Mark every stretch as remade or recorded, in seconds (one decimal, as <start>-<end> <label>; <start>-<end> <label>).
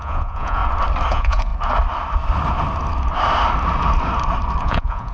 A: 0.0-0.6 remade; 0.6-1.1 recorded; 1.1-1.5 remade; 1.5-4.6 recorded; 4.6-5.1 remade